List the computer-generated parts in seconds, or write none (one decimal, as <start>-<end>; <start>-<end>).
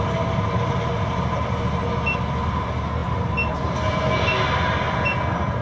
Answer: none